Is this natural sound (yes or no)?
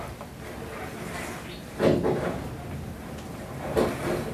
yes